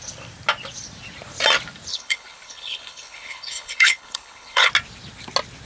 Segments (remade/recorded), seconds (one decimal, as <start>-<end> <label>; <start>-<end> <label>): 0.0-1.9 recorded; 1.9-4.7 remade; 4.7-5.7 recorded